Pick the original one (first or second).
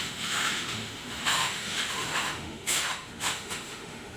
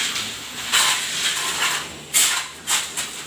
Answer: second